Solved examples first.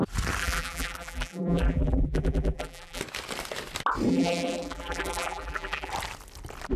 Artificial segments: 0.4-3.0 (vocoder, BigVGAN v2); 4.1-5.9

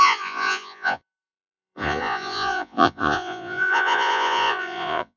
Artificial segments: 0.0-5.2 (vocoder, Vocos)

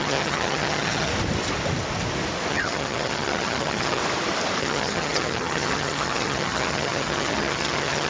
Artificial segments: 0.0-1.1 (vocoder, HiFi-GAN); 2.5-4.0; 4.6-8.1

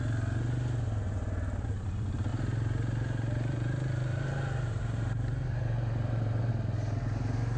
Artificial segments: 2.3-6.5 (vocoder, BigVGAN v2)